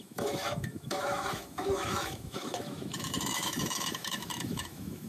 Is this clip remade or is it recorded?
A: remade